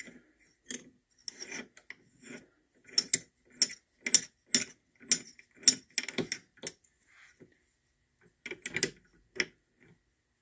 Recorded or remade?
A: recorded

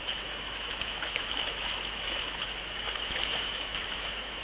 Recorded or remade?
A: remade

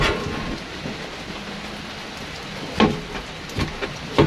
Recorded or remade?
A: recorded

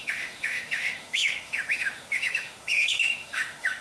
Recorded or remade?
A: remade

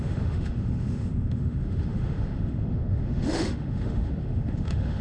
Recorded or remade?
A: remade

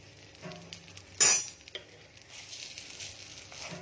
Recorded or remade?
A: recorded